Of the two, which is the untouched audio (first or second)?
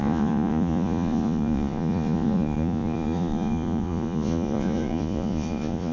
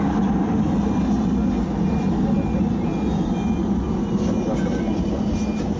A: second